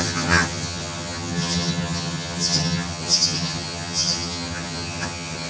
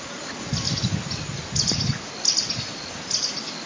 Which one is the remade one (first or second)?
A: first